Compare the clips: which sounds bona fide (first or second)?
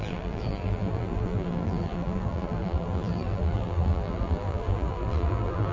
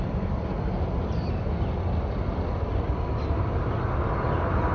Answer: second